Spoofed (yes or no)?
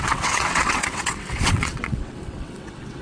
yes